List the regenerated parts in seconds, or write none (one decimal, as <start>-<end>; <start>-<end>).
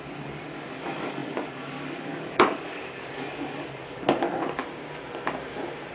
0.0-4.6